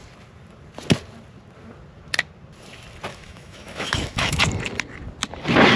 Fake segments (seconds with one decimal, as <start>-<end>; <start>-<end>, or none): 3.1-4.4